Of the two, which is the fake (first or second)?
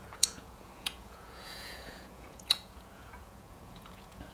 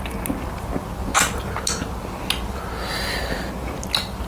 first